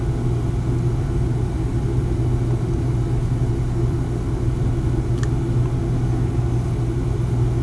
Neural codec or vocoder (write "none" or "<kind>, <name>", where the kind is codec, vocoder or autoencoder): none